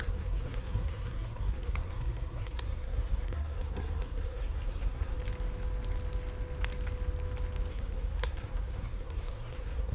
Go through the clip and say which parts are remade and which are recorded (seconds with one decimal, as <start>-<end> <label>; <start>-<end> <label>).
0.0-5.2 remade; 5.2-7.7 recorded; 7.7-9.9 remade